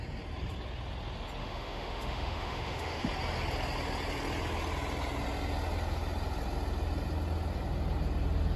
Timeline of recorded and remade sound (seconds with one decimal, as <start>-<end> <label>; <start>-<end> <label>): 0.0-1.4 recorded; 1.4-3.0 remade; 3.0-8.6 recorded